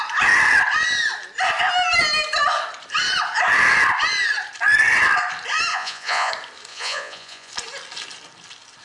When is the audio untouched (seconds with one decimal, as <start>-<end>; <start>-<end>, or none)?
0.0-5.7; 6.3-6.7; 7.5-8.8